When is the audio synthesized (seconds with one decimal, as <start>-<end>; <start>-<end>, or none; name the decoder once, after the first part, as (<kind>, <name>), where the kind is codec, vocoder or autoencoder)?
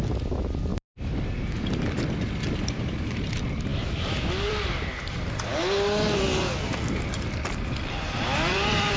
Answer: 0.0-0.7 (vocoder, BigVGAN v2); 2.8-5.5; 6.4-9.0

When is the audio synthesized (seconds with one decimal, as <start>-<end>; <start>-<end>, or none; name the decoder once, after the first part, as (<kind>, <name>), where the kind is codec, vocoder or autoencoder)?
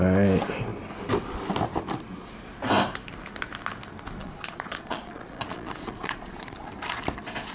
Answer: 4.2-6.7 (vocoder, Vocos)